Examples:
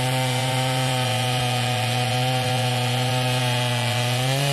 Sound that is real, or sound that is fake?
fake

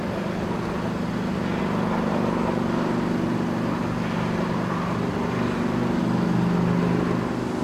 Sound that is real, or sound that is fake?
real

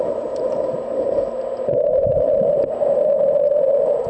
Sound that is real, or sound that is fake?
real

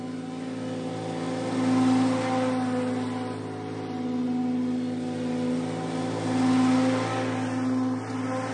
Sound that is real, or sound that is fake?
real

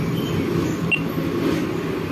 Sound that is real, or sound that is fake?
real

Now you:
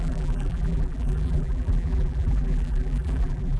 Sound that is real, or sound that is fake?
fake